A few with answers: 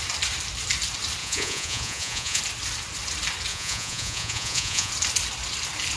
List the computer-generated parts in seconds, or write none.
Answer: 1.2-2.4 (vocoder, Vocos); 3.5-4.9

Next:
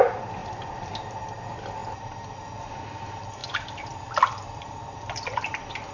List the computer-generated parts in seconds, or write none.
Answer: 0.4-0.9 (vocoder, BigVGAN v2); 3.4-5.9